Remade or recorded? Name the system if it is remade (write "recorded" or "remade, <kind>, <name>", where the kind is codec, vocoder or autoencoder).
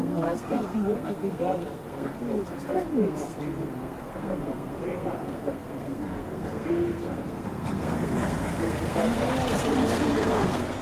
remade, codec, SNAC